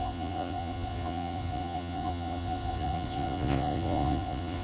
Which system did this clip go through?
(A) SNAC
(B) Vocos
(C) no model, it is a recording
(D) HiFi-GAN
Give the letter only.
B